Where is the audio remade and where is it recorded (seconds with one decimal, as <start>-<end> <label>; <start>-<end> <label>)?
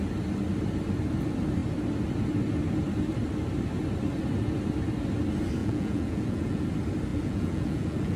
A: 0.0-5.6 recorded; 5.6-6.6 remade; 6.6-7.1 recorded; 7.1-8.2 remade